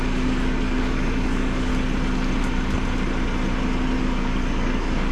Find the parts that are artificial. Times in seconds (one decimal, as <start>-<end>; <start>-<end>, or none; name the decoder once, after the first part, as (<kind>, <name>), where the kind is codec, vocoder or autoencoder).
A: 0.0-1.7 (codec, DAC); 4.0-5.1